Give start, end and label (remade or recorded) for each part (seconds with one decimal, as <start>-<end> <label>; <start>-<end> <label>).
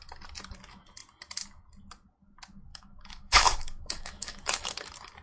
0.0-2.7 recorded; 2.7-4.7 remade; 4.7-5.2 recorded